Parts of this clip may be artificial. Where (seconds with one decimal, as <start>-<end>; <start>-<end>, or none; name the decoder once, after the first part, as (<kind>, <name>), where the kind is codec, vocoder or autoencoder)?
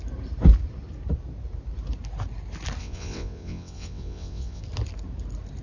2.8-4.6 (vocoder, WaveNeXt)